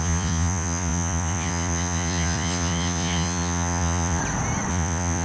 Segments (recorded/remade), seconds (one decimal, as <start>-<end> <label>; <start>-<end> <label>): 0.0-4.2 remade; 4.2-4.7 recorded; 4.7-5.2 remade